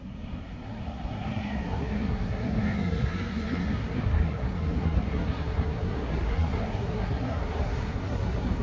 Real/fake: fake